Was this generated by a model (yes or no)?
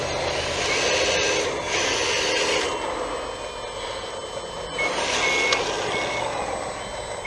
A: no